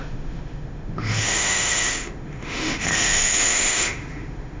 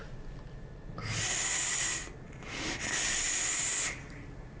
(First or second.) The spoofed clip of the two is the first